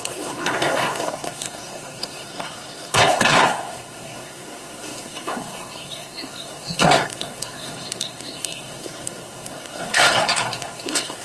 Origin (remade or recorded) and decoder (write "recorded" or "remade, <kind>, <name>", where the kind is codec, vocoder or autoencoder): remade, codec, SNAC